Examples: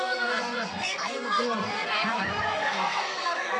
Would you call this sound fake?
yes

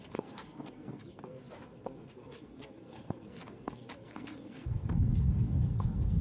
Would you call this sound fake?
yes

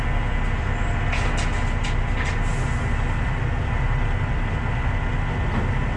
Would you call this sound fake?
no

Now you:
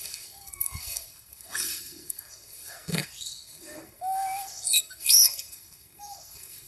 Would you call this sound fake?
yes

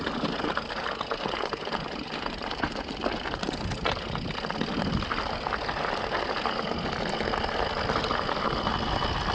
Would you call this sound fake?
no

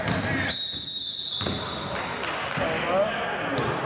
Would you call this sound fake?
no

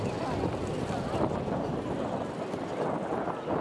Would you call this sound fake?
no